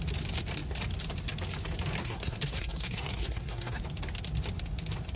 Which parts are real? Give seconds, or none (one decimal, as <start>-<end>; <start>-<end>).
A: 0.0-2.0; 3.8-5.2